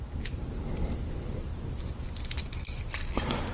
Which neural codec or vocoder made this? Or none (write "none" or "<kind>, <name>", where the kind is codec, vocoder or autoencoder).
none